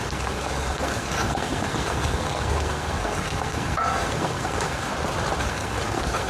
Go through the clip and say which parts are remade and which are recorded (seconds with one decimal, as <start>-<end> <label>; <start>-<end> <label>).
0.0-4.9 remade; 4.9-5.4 recorded; 5.4-6.3 remade